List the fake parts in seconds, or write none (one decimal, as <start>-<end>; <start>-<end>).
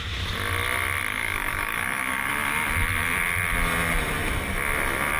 1.1-2.3